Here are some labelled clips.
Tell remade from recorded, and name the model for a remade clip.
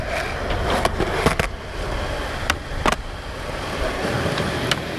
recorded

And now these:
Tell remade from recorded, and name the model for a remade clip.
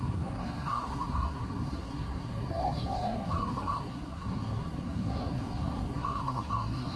remade, codec, SNAC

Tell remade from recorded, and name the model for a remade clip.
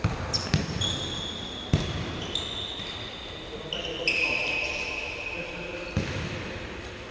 recorded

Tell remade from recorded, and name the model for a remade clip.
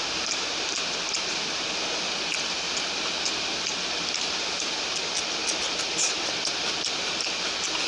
recorded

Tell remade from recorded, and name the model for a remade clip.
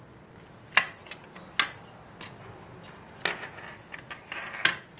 recorded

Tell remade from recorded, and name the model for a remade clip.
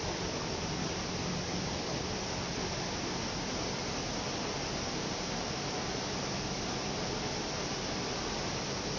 recorded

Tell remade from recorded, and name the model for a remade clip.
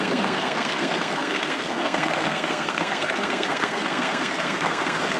remade, codec, SNAC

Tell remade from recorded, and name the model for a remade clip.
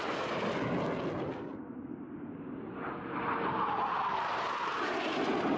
recorded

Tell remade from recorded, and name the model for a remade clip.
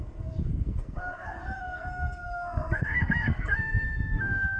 remade, codec, SNAC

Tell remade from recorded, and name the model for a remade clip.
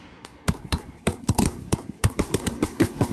remade, codec, SNAC